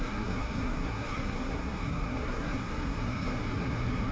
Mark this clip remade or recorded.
remade